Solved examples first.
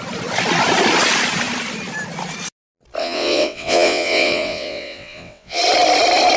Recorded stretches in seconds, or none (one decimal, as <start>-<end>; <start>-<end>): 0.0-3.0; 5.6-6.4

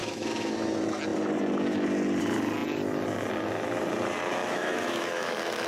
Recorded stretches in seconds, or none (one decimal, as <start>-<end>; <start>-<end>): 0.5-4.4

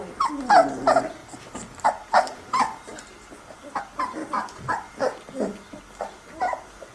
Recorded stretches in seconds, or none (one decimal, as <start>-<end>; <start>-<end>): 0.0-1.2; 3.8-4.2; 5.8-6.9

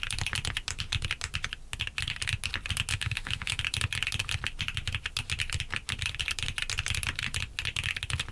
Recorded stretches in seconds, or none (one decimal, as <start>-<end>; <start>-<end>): 0.0-2.9; 3.6-8.3

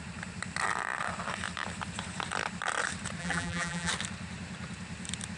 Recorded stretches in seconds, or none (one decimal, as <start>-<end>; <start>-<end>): 0.0-3.2; 3.9-5.4

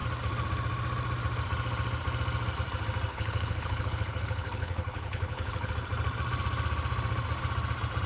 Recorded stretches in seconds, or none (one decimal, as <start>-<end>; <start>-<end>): 0.0-3.1; 5.7-8.1

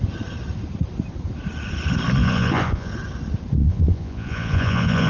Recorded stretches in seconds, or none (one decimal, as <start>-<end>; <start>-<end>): 0.0-2.2; 2.9-3.6

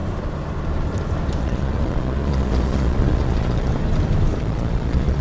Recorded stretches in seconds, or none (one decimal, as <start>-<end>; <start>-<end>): 0.0-1.4; 3.7-4.4